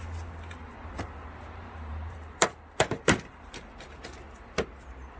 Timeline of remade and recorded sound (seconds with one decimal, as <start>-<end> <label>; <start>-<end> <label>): 0.0-0.6 recorded; 0.6-3.7 remade; 3.7-5.2 recorded